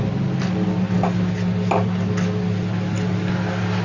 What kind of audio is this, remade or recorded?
recorded